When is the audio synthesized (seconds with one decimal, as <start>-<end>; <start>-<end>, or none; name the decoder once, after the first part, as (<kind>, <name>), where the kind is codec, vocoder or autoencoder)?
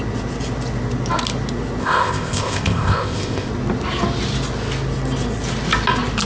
1.8-3.5 (codec, ZipCodec)